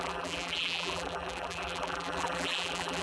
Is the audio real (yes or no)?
no